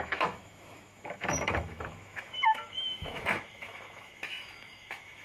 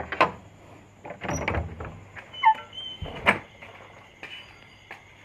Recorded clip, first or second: second